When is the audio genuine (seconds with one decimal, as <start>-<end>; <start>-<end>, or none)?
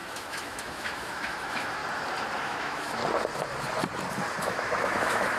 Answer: 1.8-2.4; 3.0-4.4